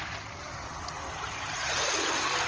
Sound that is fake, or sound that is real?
real